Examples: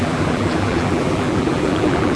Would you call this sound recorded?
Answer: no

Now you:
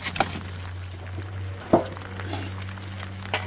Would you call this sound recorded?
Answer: yes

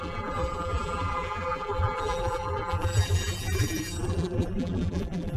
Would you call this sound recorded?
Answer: no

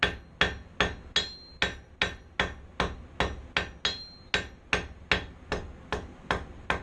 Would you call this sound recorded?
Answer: yes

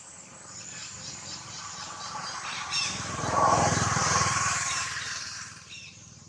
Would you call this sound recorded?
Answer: no